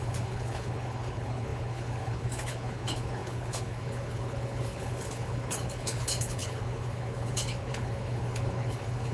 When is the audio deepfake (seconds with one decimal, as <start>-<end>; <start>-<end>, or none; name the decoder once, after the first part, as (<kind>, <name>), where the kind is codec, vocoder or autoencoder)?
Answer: 0.0-9.1 (codec, HILCodec)